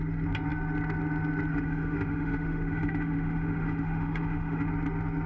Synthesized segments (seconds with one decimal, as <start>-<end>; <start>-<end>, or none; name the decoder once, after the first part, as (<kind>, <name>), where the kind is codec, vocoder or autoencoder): 1.5-4.7 (autoencoder, DAC-VAE)